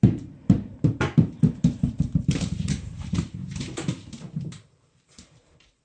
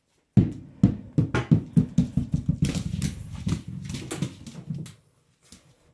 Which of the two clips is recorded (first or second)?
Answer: second